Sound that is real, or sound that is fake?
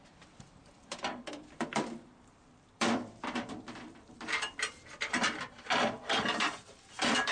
fake